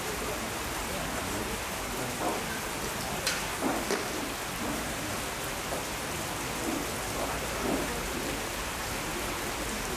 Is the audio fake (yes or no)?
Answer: no